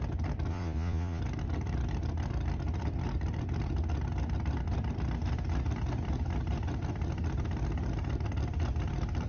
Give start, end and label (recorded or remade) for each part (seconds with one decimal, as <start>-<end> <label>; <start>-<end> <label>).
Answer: 0.0-0.5 recorded; 0.5-1.2 remade; 1.2-9.3 recorded

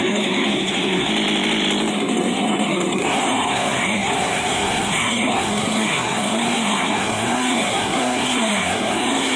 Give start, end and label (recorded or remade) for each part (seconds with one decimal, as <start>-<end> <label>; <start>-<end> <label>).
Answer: 0.0-1.1 remade; 1.1-1.9 recorded; 1.9-9.4 remade